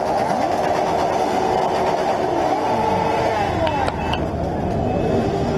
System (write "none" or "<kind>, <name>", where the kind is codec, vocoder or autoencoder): none